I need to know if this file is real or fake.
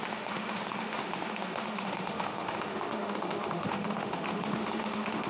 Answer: fake